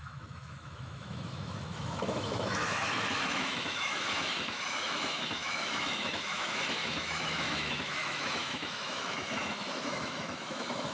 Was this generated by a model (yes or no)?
yes